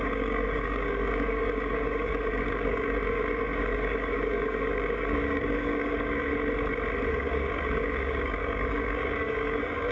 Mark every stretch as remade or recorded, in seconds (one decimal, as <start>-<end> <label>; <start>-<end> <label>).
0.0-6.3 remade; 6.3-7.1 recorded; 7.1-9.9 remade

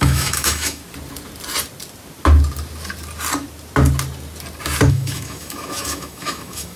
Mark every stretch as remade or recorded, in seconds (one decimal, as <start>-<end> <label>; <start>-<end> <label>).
0.0-0.8 remade; 0.8-4.9 recorded; 4.9-6.8 remade

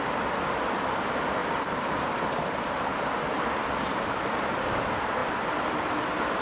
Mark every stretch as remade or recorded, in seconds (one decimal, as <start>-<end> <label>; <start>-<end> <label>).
0.0-1.4 recorded; 1.4-4.8 remade; 4.8-6.4 recorded

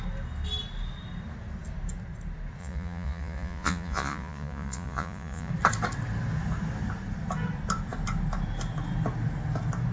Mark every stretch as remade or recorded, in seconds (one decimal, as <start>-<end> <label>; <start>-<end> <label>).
0.0-2.6 recorded; 2.6-5.5 remade; 5.5-9.9 recorded

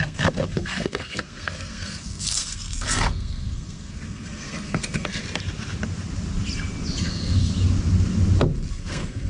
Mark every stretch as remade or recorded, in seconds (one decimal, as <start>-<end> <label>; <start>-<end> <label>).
0.0-5.2 remade; 5.2-7.0 recorded; 7.0-7.5 remade; 7.5-8.7 recorded; 8.7-9.3 remade

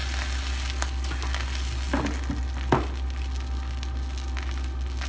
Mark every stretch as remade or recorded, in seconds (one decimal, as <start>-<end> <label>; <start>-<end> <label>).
0.0-5.1 recorded